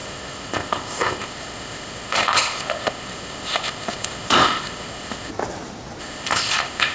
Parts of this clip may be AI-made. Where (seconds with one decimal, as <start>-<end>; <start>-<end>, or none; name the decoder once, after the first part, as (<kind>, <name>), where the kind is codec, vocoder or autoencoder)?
0.0-5.3 (codec, ZipCodec); 6.0-6.9